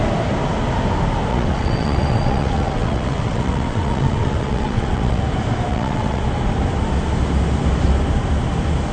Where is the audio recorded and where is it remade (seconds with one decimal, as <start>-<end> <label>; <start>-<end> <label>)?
0.0-1.3 recorded; 1.3-5.2 remade; 5.2-5.7 recorded; 5.7-6.2 remade; 6.2-8.9 recorded